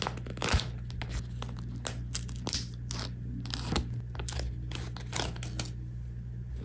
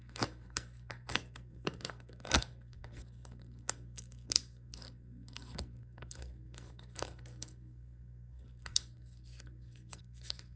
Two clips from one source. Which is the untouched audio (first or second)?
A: first